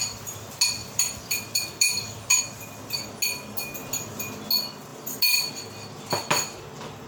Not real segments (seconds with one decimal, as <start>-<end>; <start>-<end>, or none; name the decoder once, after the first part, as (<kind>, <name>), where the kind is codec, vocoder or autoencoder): 0.8-2.4 (vocoder, BigVGAN v2); 4.9-5.5